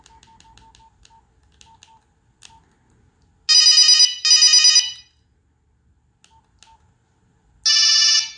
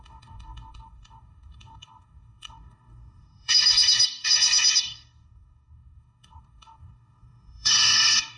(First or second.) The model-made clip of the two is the second